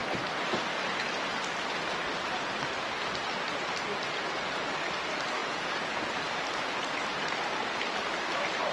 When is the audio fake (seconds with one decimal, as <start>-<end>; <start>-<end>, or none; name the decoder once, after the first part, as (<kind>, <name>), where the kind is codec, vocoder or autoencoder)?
5.4-6.0 (vocoder, Vocos)